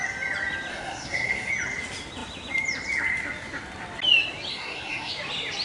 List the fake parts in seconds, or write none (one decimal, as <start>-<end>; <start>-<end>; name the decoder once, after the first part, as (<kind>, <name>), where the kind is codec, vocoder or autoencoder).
0.7-1.5 (codec, SNAC); 4.5-5.1